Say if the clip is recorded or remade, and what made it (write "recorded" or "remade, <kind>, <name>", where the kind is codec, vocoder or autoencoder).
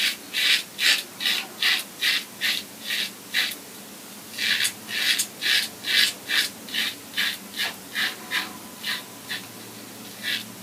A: recorded